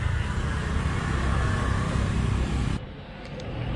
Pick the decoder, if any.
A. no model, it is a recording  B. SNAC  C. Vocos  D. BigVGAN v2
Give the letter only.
A